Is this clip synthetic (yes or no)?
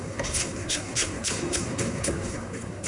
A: yes